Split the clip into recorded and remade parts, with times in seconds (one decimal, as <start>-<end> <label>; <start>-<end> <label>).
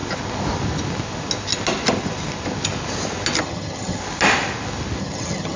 0.0-3.4 recorded; 3.4-4.0 remade; 4.0-5.0 recorded; 5.0-5.6 remade